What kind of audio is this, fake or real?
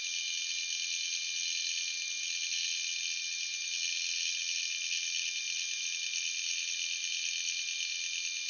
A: real